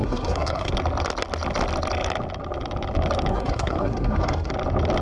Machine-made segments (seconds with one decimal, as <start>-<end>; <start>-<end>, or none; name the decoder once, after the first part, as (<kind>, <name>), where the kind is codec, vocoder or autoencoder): 0.0-0.7 (codec, SNAC); 3.3-4.5